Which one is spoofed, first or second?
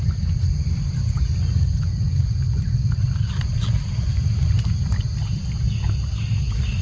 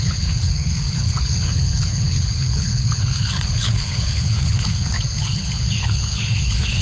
second